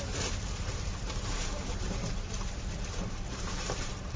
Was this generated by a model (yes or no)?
yes